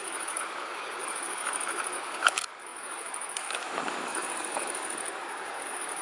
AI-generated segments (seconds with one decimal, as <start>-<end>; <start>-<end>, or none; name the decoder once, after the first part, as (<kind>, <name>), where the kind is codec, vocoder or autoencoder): 0.0-6.0 (codec, DAC)